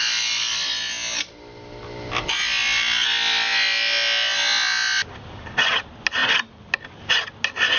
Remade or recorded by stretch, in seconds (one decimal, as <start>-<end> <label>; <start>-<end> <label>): 0.0-7.8 recorded